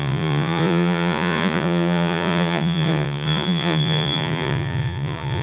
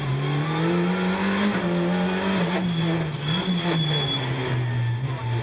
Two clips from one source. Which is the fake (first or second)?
first